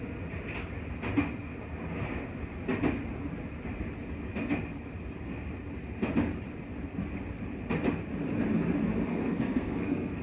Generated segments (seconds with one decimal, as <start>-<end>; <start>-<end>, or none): 9.1-10.2